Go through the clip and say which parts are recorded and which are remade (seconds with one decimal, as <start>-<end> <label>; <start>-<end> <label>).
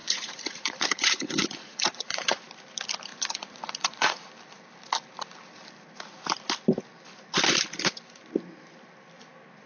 0.0-2.4 remade; 2.4-3.1 recorded; 3.1-4.3 remade; 4.3-9.7 recorded